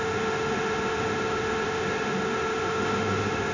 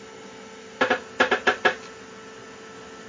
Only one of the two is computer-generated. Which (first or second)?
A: first